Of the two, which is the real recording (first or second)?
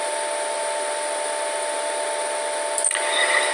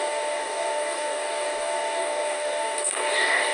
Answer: first